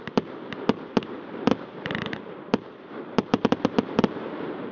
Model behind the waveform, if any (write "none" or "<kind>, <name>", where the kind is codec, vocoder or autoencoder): vocoder, BigVGAN v2